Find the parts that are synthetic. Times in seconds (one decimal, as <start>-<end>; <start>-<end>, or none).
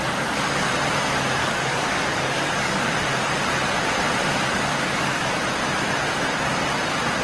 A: 1.4-2.9; 4.7-5.3